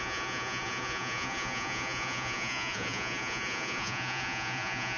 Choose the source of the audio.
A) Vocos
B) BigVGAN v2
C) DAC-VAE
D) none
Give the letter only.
A